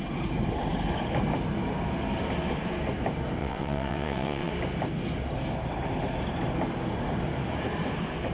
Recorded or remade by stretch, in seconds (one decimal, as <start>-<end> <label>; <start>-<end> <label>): 0.0-3.4 recorded; 3.4-4.5 remade; 4.5-8.3 recorded